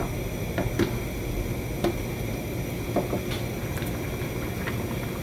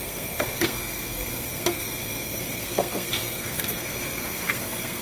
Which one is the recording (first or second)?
first